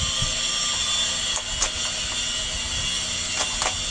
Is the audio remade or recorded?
recorded